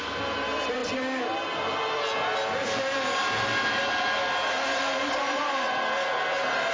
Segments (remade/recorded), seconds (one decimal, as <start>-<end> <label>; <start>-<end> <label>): 0.0-6.7 recorded

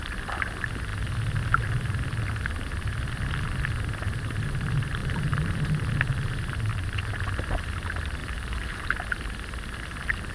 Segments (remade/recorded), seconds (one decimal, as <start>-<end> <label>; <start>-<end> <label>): 0.0-5.0 recorded; 5.0-5.9 remade; 5.9-6.7 recorded; 6.7-7.2 remade; 7.2-8.2 recorded; 8.2-8.9 remade; 8.9-10.3 recorded

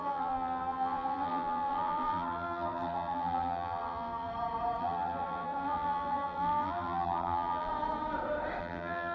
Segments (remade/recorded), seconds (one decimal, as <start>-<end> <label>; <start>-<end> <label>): 0.0-4.3 remade; 4.3-4.8 recorded; 4.8-7.7 remade; 7.7-8.6 recorded; 8.6-9.1 remade